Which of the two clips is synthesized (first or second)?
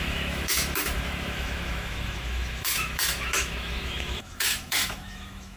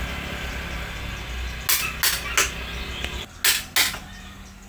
first